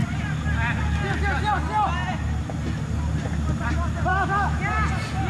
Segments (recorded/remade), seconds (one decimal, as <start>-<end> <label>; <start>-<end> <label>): 0.0-4.1 recorded; 4.1-4.6 remade; 4.6-5.3 recorded